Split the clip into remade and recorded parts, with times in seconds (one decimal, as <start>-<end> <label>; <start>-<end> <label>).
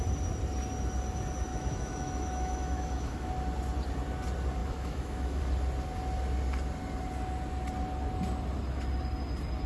0.0-1.5 recorded; 1.5-3.3 remade; 3.3-4.6 recorded; 4.6-5.4 remade; 5.4-9.7 recorded